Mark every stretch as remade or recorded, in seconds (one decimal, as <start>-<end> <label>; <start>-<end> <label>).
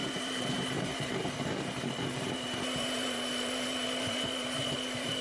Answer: 0.0-5.2 remade